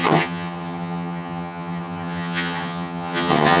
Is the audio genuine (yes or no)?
no